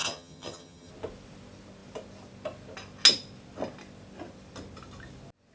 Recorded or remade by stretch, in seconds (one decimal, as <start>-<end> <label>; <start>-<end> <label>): 0.0-0.9 remade; 0.9-5.5 recorded